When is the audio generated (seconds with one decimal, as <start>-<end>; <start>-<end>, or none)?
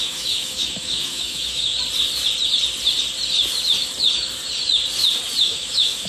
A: 0.0-1.7; 5.4-6.1